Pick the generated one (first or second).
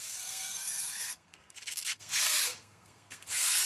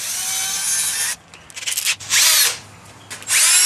first